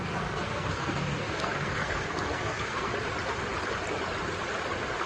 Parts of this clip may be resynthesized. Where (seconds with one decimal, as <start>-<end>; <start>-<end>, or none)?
0.0-2.9